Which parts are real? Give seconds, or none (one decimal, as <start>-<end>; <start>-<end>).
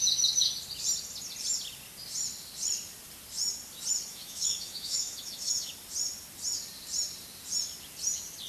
0.0-4.1; 5.7-8.5